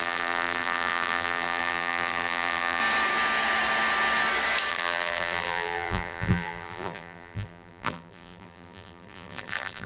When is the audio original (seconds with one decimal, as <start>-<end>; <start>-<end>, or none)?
2.8-4.7